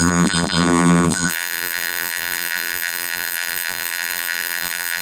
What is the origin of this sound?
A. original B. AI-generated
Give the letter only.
B